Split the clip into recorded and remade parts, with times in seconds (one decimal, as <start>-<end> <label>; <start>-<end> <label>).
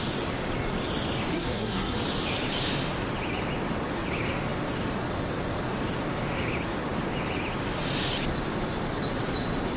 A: 0.0-1.3 recorded; 1.3-2.0 remade; 2.0-9.8 recorded